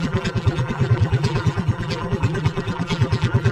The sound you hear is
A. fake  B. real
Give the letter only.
A